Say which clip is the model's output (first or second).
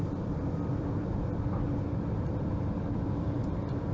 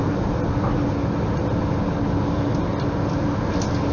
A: first